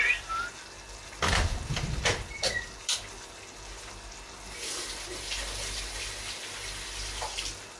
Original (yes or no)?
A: yes